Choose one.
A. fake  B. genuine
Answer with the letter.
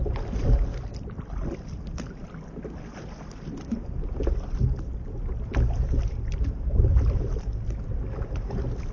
B